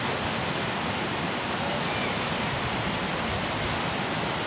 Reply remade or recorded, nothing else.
recorded